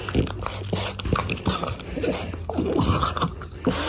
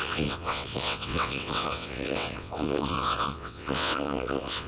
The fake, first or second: second